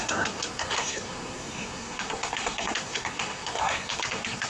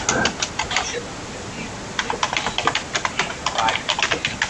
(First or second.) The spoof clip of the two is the first